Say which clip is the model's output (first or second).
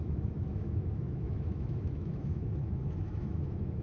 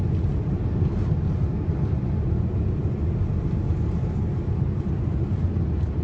first